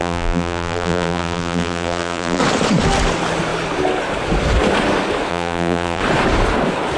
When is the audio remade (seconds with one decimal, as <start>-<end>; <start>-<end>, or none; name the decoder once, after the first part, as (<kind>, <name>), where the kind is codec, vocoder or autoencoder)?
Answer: 0.0-2.4 (vocoder, BigVGAN v2); 5.3-6.0